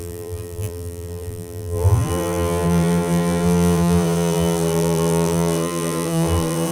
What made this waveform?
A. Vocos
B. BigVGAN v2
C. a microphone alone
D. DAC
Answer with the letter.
B